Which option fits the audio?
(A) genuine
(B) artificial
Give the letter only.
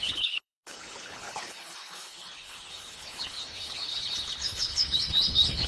B